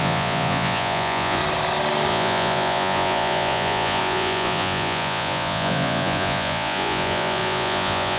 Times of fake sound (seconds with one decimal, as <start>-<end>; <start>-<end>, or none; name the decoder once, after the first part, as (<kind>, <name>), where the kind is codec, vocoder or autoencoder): 0.0-1.4 (vocoder, Vocos); 2.1-8.2